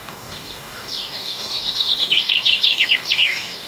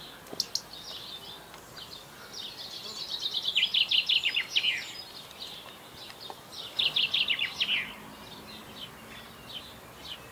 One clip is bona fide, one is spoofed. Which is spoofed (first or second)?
first